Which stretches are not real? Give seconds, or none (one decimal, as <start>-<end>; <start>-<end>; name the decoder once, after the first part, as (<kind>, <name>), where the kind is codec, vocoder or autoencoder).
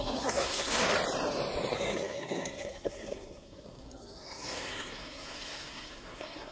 0.0-0.9 (codec, SNAC); 1.7-6.5